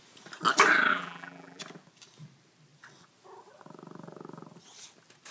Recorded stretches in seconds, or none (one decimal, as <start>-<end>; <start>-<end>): 0.0-0.9; 1.6-5.3